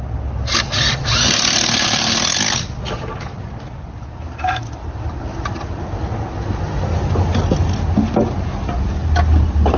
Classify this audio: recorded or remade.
recorded